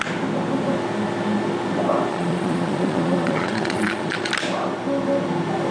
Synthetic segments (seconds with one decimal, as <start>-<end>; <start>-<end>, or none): 2.1-4.3